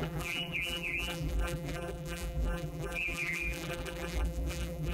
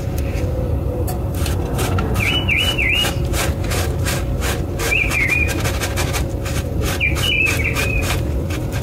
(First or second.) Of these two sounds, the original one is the second